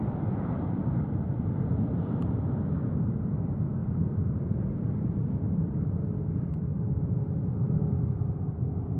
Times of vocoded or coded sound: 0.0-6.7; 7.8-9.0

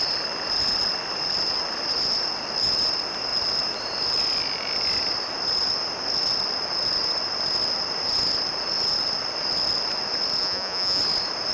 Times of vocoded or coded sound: 10.4-11.0

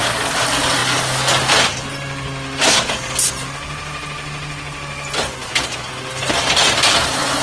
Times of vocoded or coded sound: none